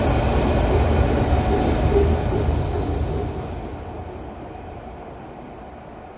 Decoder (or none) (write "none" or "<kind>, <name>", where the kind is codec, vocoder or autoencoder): none